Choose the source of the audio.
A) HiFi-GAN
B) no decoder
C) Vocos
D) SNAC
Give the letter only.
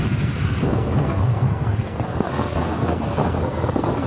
D